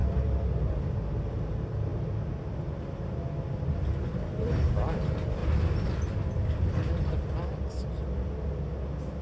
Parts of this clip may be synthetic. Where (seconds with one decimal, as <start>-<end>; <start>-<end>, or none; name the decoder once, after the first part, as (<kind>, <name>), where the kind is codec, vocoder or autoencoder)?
none